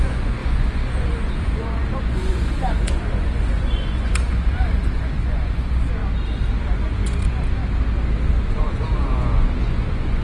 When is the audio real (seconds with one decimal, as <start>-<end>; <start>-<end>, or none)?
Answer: 6.0-6.6; 7.6-8.6